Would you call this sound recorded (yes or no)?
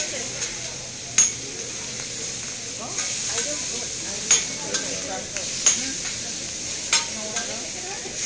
yes